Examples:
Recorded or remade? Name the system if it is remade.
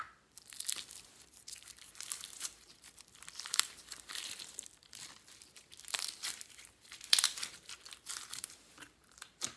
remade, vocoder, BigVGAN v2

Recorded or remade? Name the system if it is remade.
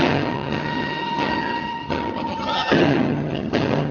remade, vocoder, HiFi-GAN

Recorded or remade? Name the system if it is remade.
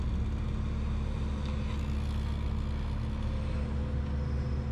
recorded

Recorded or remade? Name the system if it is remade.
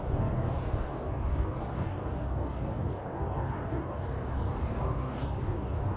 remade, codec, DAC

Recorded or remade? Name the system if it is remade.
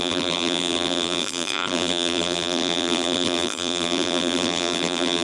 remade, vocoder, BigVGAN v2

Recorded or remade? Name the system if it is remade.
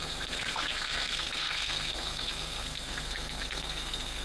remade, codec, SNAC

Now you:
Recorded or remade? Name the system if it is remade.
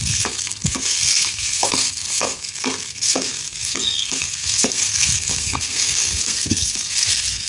remade, codec, SNAC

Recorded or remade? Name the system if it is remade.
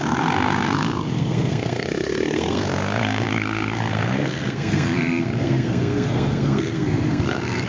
remade, codec, SNAC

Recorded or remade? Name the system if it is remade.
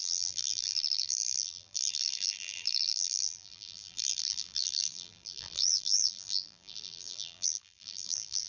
remade, vocoder, BigVGAN v2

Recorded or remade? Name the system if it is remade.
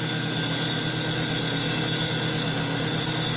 recorded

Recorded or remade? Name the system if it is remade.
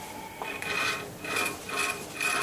recorded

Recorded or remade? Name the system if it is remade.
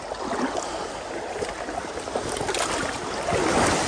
recorded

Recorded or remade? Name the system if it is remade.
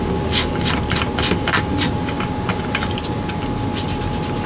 recorded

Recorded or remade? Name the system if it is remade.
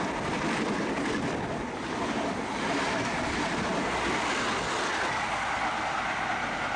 recorded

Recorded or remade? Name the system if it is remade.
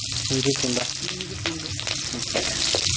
recorded